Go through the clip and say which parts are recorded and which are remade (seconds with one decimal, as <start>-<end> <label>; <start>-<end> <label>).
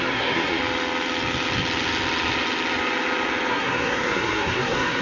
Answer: 0.0-0.6 remade; 0.6-3.5 recorded; 3.5-5.0 remade